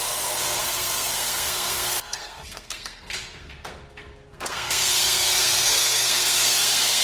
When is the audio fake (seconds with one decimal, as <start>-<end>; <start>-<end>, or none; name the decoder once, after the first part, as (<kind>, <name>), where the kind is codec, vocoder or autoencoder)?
0.0-7.0 (codec, SNAC)